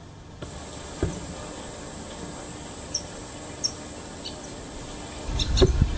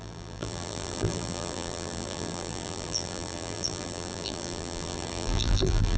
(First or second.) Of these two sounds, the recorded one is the first